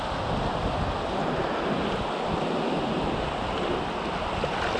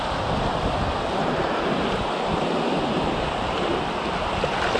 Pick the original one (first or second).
first